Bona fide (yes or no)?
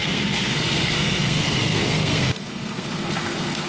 no